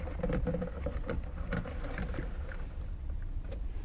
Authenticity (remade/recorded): recorded